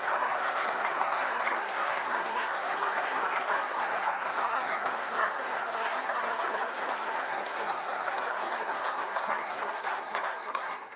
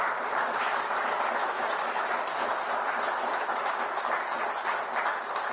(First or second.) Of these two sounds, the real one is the second